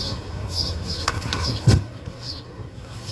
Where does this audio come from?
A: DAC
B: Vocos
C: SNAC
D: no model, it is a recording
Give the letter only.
C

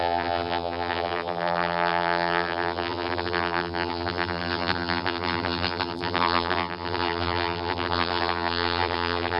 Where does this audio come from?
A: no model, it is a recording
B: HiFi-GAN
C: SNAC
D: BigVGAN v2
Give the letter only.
D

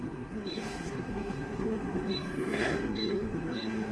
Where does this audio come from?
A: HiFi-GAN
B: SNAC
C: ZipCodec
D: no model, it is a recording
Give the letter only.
B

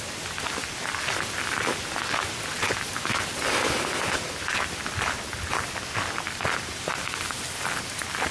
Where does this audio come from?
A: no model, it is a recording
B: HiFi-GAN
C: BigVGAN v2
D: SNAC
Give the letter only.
A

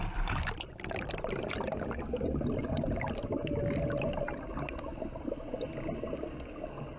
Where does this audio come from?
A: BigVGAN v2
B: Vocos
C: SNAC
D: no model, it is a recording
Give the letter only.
D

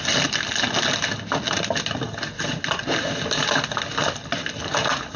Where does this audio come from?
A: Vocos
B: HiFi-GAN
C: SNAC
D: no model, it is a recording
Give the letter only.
D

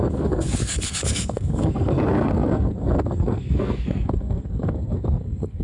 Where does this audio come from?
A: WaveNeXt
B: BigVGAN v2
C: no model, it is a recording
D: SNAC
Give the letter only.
D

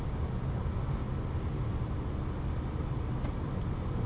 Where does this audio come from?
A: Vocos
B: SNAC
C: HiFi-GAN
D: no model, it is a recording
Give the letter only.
D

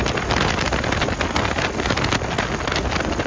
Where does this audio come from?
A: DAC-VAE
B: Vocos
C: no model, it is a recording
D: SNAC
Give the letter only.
C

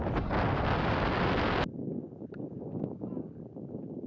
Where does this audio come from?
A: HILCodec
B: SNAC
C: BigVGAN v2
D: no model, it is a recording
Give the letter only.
D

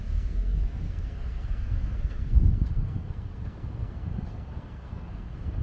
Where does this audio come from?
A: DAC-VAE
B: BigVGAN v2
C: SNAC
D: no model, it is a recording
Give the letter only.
C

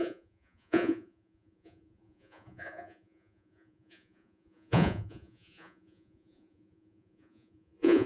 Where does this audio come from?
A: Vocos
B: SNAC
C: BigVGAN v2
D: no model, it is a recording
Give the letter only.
A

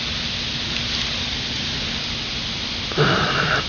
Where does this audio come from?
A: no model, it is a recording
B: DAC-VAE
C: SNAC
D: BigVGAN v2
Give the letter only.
A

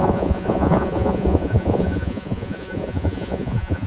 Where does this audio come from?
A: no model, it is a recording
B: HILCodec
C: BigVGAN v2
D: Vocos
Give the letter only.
D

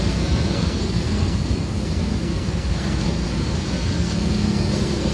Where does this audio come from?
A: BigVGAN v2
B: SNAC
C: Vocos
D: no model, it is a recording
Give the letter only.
B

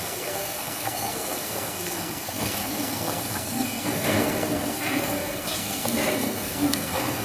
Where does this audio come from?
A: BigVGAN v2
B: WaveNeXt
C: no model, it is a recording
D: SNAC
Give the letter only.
D